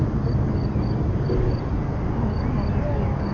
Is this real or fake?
real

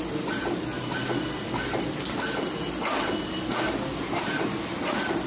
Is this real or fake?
real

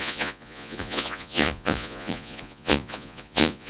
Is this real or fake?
fake